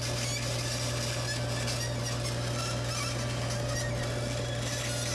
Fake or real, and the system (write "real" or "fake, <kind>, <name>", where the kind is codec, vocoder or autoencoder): real